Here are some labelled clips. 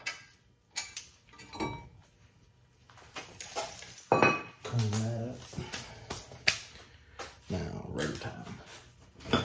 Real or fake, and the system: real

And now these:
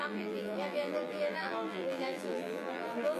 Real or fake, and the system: fake, vocoder, BigVGAN v2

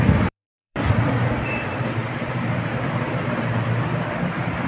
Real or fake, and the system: fake, vocoder, BigVGAN v2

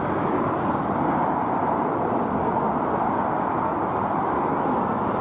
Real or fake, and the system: real